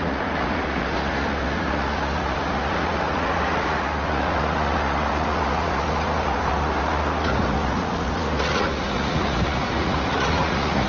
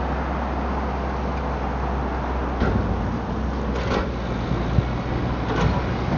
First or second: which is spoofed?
first